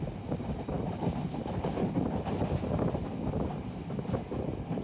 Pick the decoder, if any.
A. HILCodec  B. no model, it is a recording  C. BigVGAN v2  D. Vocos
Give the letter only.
B